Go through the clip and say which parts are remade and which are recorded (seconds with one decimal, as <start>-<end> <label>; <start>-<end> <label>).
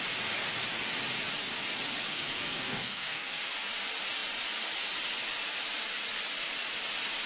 0.0-2.1 recorded; 2.1-3.4 remade; 3.4-7.3 recorded